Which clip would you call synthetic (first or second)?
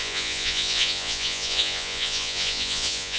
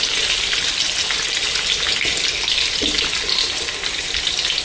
first